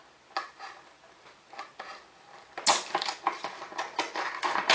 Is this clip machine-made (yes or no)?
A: no